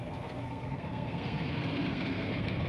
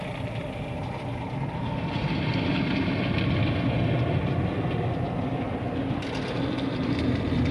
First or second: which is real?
second